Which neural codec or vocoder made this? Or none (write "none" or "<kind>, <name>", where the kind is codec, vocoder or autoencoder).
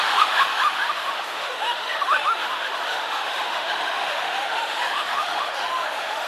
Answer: autoencoder, DAC-VAE